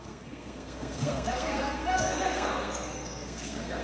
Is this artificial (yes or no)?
yes